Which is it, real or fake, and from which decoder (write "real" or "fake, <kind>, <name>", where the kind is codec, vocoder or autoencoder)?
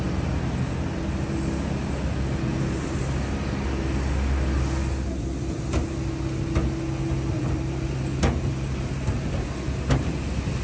real